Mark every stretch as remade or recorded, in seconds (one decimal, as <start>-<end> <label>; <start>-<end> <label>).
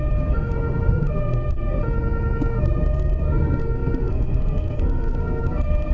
0.0-1.8 remade; 1.8-2.5 recorded; 2.5-5.9 remade